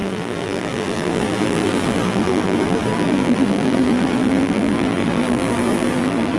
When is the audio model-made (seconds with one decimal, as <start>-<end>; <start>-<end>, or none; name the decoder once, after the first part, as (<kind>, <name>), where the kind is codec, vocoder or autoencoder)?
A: 0.0-6.4 (vocoder, BigVGAN v2)